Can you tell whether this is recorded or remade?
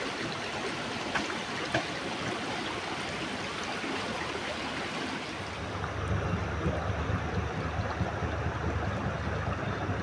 recorded